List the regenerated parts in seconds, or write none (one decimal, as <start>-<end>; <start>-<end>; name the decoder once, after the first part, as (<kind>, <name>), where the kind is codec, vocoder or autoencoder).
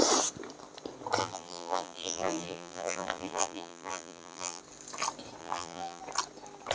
1.2-4.6 (vocoder, BigVGAN v2); 5.4-6.0